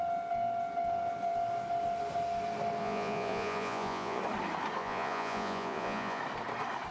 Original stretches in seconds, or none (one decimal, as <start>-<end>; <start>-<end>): 0.0-2.8; 4.2-4.8; 6.2-6.9